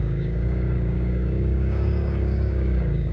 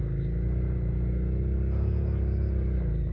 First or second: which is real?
second